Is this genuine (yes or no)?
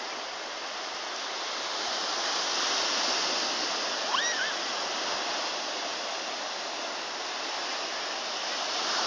yes